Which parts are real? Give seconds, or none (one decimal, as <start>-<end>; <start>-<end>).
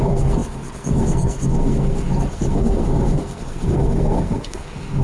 none